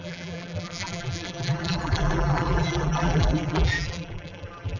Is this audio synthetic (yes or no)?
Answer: yes